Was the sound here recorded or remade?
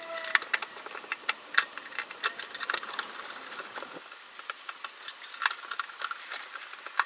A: recorded